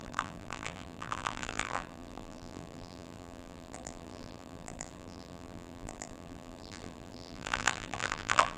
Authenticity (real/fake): fake